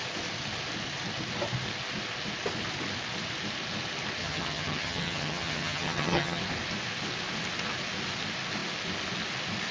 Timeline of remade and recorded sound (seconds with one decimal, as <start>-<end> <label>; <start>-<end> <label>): 0.0-4.2 recorded; 4.2-6.4 remade; 6.4-9.7 recorded